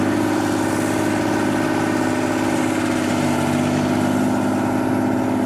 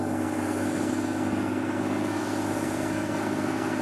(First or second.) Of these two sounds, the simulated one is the second